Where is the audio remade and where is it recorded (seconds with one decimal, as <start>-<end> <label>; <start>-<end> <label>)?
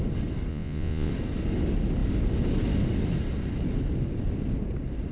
0.0-0.5 recorded; 0.5-1.1 remade; 1.1-5.1 recorded